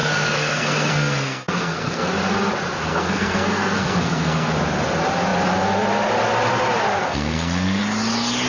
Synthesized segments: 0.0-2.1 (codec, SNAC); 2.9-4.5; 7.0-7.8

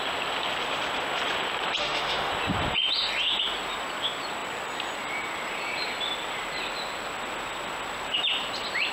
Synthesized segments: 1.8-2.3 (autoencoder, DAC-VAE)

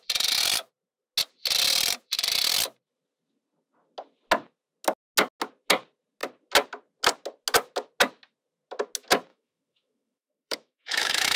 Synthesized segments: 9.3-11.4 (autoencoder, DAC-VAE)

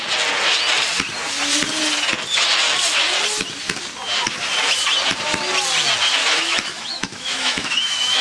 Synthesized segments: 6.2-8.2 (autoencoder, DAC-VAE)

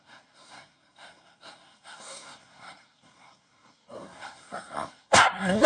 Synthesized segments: 0.0-5.7 (codec, SNAC)

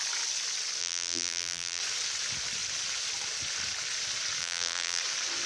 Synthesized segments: 0.8-1.8 (vocoder, BigVGAN v2); 4.4-5.0

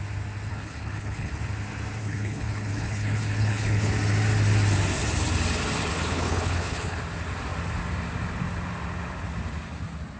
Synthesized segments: 0.5-1.4 (codec, HILCodec); 2.0-3.9; 5.9-7.0

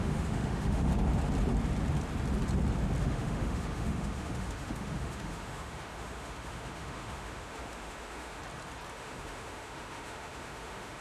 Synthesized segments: 0.0-0.9 (autoencoder, DAC-VAE); 3.0-8.4; 8.9-11.0